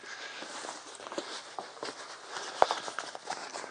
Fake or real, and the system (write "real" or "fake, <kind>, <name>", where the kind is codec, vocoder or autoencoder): real